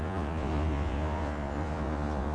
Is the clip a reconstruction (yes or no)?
yes